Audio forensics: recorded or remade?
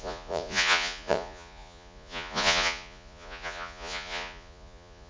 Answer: remade